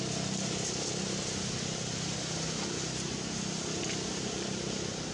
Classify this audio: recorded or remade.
recorded